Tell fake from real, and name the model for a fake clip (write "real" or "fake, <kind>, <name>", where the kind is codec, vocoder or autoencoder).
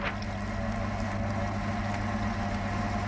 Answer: real